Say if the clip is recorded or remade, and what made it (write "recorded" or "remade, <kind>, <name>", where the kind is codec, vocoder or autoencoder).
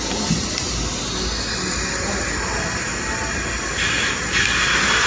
recorded